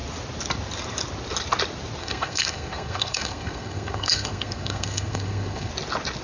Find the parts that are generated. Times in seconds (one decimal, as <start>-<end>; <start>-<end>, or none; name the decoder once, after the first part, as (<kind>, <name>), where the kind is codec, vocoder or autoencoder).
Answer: 2.0-5.7 (codec, SNAC)